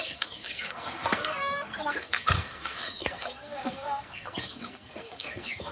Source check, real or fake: fake